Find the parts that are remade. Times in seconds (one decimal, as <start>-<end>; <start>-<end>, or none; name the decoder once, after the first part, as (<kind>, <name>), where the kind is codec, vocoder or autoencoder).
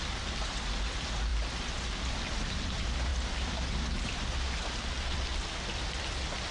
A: 3.1-5.4 (vocoder, BigVGAN v2)